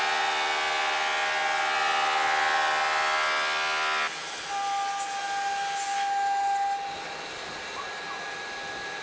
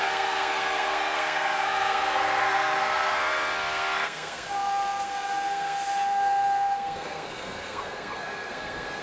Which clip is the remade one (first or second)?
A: second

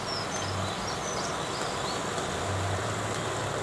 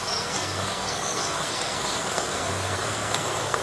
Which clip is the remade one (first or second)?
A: second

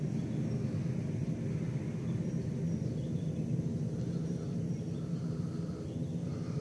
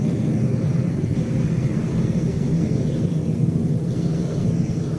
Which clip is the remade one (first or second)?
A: second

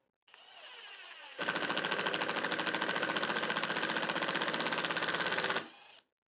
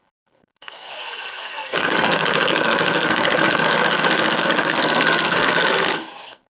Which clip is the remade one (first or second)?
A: second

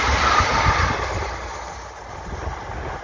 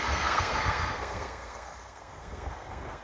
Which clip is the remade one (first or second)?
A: second